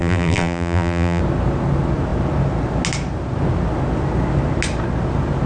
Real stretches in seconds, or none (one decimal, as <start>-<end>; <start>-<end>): 1.2-5.5